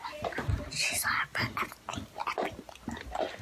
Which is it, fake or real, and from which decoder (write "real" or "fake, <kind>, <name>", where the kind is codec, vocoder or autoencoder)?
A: real